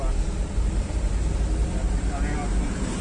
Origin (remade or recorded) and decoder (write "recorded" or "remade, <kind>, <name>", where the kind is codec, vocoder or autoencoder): recorded